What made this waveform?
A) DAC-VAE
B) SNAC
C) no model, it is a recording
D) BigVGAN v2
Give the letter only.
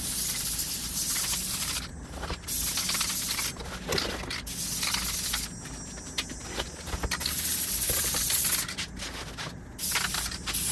C